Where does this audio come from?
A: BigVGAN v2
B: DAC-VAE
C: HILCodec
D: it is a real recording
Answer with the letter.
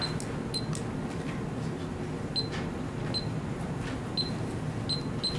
D